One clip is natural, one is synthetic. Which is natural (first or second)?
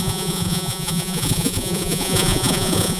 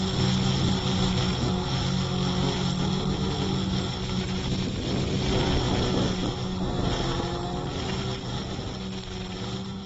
second